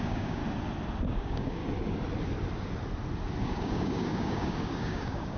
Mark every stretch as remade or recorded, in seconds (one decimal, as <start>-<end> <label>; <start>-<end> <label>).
0.0-0.4 remade; 0.4-1.0 recorded; 1.0-1.6 remade; 1.6-3.4 recorded; 3.4-5.4 remade